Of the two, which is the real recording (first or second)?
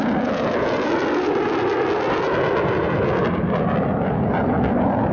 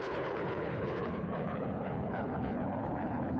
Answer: first